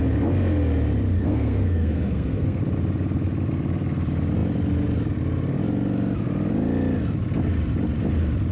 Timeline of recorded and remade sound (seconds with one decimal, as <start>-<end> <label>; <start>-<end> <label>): 0.0-1.2 recorded; 1.2-2.6 remade; 2.6-8.5 recorded